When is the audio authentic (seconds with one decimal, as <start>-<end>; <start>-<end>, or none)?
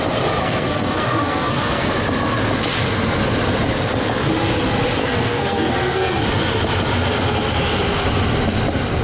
0.0-0.4; 1.9-5.0; 6.2-9.0